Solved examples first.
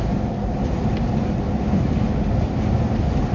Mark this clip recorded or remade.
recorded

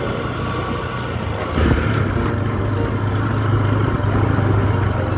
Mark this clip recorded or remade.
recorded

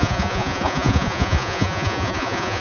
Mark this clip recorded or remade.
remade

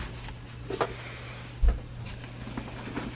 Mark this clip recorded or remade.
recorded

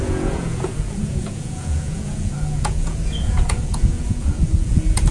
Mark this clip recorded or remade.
remade